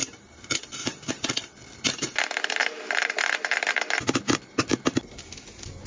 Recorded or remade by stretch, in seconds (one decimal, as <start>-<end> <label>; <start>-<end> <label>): 0.0-5.9 recorded